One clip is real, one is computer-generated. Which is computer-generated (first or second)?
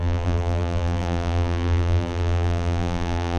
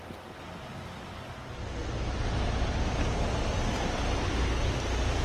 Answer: first